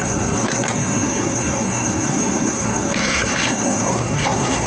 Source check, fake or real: fake